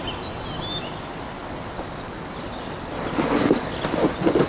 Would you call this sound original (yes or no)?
yes